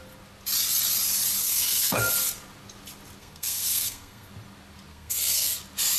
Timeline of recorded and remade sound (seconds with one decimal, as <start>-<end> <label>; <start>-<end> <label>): 0.0-1.4 recorded; 1.4-2.1 remade; 2.1-3.2 recorded; 3.2-4.3 remade; 4.3-4.9 recorded; 4.9-5.6 remade; 5.6-6.0 recorded